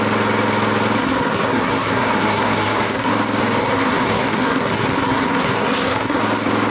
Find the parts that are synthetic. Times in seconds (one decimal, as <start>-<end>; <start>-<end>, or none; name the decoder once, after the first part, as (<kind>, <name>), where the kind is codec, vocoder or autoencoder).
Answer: 1.0-3.1 (codec, SNAC); 3.6-6.2